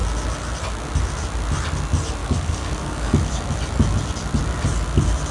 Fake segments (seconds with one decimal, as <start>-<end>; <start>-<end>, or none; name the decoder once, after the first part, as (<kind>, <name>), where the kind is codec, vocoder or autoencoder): 2.2-3.3 (codec, DAC)